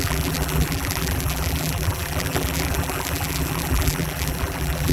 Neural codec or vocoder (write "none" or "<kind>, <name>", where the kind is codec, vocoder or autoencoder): vocoder, BigVGAN v2